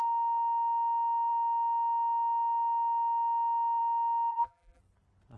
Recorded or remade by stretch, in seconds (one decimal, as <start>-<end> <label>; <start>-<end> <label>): 0.0-4.3 recorded; 4.3-4.8 remade; 4.8-5.4 recorded